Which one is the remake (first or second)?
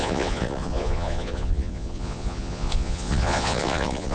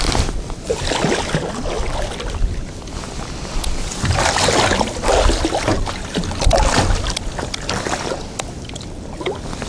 first